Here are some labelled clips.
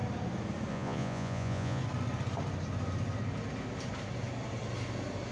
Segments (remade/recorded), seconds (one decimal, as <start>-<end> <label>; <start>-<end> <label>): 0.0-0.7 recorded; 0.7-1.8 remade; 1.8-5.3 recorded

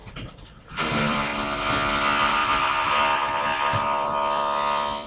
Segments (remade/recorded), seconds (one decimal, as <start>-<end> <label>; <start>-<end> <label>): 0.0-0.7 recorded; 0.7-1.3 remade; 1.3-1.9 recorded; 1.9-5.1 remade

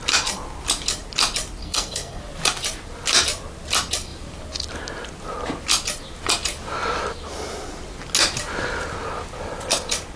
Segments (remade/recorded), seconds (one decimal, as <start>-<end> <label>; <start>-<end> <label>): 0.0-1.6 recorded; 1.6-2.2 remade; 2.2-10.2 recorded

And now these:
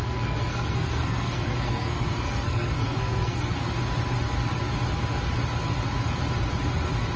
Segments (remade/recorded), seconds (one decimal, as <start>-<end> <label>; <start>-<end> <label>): 0.0-3.6 remade; 3.6-7.2 recorded

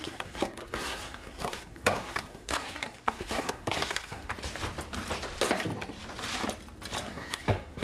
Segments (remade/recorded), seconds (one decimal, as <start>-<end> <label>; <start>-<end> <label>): 0.0-4.3 remade; 4.3-7.0 recorded; 7.0-7.8 remade

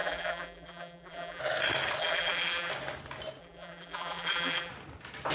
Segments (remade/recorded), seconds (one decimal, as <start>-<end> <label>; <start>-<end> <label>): 0.0-1.4 remade; 1.4-2.0 recorded; 2.0-2.7 remade; 2.7-3.4 recorded; 3.4-4.7 remade; 4.7-5.3 recorded

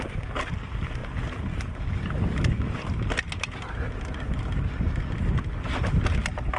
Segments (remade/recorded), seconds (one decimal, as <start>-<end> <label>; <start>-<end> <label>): 0.0-6.6 recorded